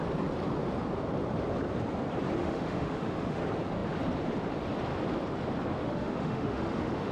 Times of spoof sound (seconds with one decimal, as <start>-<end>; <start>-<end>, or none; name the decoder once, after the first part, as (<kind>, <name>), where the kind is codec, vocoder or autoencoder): 2.4-3.4 (autoencoder, DAC-VAE); 5.8-7.1